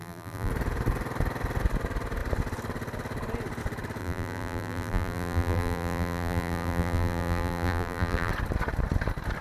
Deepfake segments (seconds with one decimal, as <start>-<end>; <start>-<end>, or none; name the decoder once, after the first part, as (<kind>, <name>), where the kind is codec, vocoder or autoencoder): 0.0-0.5 (vocoder, BigVGAN v2); 4.0-8.3